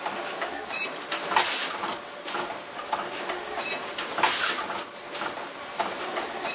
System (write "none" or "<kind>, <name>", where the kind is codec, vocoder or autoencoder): none